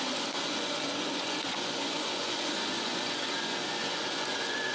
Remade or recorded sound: remade